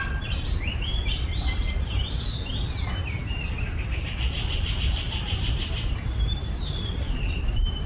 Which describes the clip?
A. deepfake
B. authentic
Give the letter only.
A